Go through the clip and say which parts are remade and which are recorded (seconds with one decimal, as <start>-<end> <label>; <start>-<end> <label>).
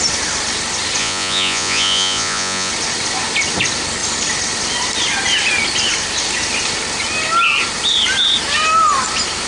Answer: 0.0-1.0 recorded; 1.0-2.7 remade; 2.7-9.5 recorded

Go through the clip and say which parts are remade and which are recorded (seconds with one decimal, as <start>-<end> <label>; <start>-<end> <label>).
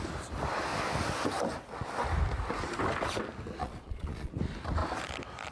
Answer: 0.0-3.6 recorded; 3.6-4.3 remade; 4.3-5.5 recorded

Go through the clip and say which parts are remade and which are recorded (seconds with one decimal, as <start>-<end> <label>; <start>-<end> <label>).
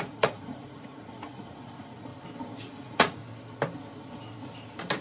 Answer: 0.0-2.1 remade; 2.1-2.7 recorded; 2.7-3.2 remade; 3.2-5.0 recorded